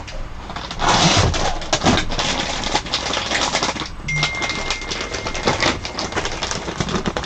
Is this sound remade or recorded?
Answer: recorded